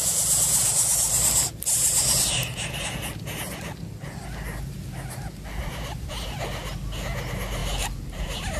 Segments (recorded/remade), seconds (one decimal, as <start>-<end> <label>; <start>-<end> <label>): 0.0-8.6 recorded